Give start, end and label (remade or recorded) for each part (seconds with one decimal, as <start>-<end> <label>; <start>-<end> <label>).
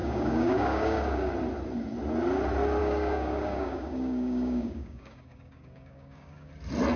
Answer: 0.0-1.3 remade; 1.3-2.8 recorded; 2.8-6.5 remade; 6.5-7.0 recorded